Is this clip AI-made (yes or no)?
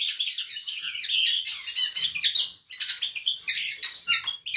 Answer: no